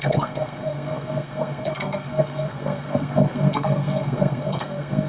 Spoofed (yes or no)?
yes